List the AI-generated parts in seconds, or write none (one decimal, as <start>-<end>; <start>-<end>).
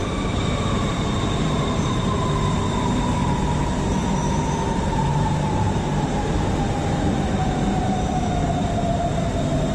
0.0-2.3; 4.0-8.4